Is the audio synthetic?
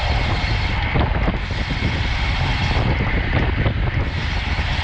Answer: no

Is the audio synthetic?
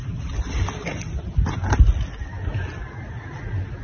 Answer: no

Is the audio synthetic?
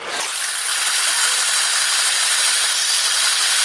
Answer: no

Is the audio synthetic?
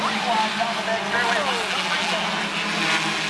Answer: no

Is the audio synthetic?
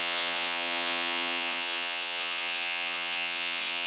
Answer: yes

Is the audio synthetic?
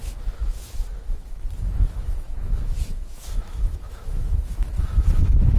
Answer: yes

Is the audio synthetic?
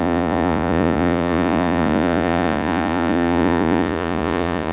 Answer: yes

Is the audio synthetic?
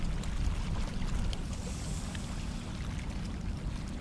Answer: no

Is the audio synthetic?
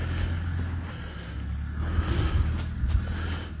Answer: no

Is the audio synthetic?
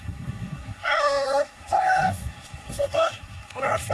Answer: yes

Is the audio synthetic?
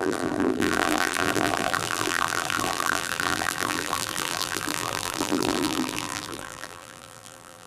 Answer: yes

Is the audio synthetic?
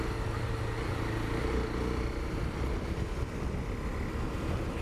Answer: no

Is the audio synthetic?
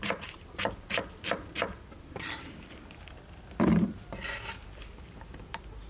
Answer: yes